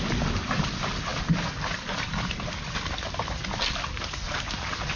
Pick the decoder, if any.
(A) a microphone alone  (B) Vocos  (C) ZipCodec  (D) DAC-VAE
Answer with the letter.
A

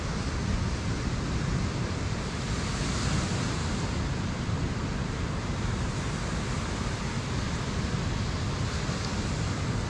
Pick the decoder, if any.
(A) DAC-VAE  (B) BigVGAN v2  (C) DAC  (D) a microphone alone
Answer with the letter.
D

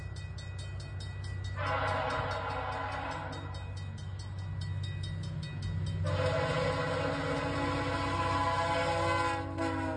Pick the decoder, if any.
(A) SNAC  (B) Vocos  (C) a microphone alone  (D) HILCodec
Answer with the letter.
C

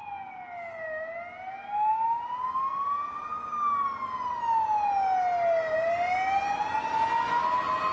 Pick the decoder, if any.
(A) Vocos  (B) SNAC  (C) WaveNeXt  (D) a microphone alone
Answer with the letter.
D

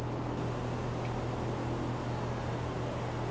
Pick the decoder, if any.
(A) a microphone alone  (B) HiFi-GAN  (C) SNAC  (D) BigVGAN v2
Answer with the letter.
A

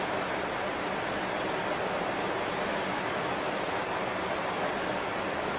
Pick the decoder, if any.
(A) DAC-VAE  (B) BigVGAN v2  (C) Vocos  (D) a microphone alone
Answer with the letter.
D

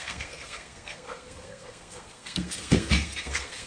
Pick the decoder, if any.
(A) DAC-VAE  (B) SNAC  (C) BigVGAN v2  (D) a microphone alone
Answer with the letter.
B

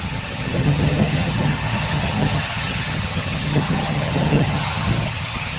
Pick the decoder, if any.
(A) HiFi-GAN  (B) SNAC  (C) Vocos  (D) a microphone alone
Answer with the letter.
A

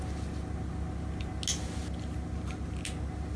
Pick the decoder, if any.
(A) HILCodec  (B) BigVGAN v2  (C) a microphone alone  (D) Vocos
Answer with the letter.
C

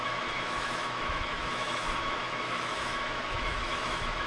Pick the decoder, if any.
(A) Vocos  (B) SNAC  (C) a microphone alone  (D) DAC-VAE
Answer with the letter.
D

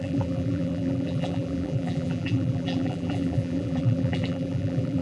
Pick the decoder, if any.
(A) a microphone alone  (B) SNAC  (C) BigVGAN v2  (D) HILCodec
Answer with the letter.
C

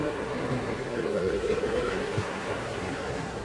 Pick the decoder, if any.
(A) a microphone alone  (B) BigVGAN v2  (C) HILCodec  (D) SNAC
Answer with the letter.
D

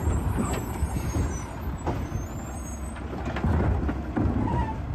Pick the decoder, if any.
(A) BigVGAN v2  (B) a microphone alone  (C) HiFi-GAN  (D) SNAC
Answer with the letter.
B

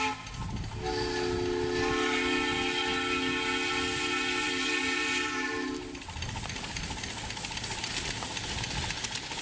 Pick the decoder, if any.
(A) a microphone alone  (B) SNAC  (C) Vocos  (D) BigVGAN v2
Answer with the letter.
A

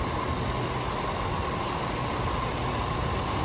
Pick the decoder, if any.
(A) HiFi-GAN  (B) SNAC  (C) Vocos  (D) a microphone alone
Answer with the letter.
D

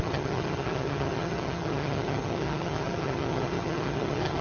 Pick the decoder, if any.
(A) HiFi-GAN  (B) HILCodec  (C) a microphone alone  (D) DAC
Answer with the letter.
A